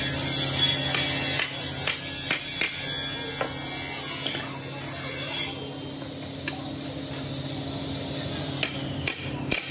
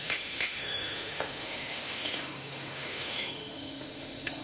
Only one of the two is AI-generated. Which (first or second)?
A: second